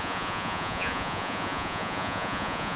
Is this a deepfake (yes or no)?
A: yes